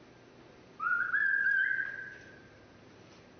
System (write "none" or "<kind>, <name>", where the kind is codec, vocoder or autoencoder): none